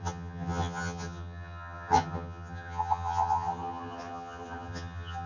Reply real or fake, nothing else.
fake